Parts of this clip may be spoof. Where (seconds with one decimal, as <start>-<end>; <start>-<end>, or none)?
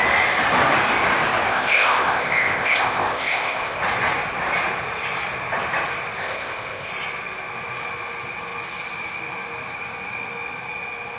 1.5-3.8; 6.2-6.9